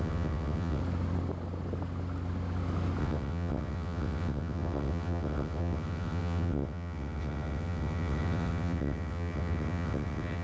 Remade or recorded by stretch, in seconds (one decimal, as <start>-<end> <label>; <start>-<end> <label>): 0.0-0.8 remade; 0.8-3.0 recorded; 3.0-10.4 remade